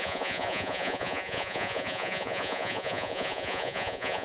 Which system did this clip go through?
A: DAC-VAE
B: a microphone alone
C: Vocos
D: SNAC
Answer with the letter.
C